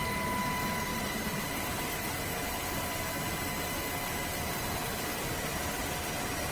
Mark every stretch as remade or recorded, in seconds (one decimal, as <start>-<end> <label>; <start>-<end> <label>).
0.0-0.9 recorded; 0.9-1.8 remade; 1.8-6.5 recorded